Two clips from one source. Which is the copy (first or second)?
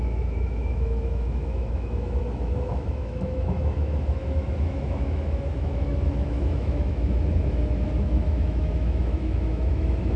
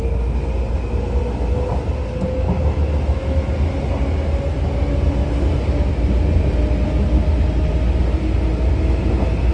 first